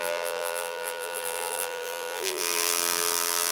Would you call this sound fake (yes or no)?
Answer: yes